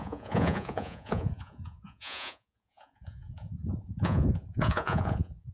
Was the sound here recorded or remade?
remade